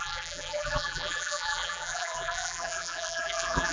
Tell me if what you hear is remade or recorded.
remade